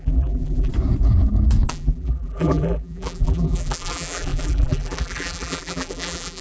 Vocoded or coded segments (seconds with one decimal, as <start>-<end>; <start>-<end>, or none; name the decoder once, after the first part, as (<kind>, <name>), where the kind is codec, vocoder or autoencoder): 0.0-0.7 (vocoder, BigVGAN v2); 1.7-6.4